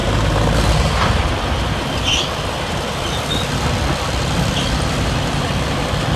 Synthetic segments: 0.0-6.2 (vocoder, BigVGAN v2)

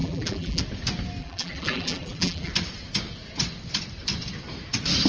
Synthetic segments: 0.0-0.6 (vocoder, BigVGAN v2); 1.2-2.5

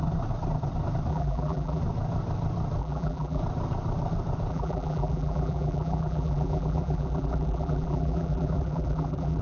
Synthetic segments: 1.1-1.8 (vocoder, BigVGAN v2); 2.8-3.4; 4.5-9.4

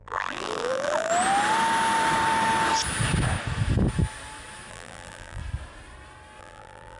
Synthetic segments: 0.0-1.1 (vocoder, BigVGAN v2); 4.7-5.4; 6.4-7.0

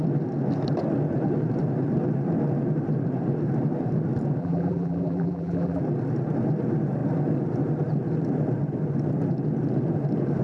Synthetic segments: 4.4-5.8 (vocoder, BigVGAN v2)

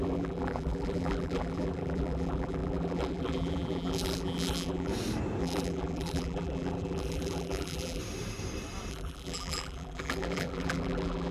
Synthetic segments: 0.0-4.9 (vocoder, BigVGAN v2); 5.4-8.0; 8.9-11.3

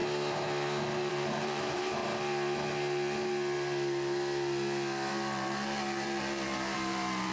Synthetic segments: 1.1-2.0 (vocoder, BigVGAN v2); 5.1-7.3